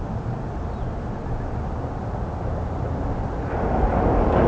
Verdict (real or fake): real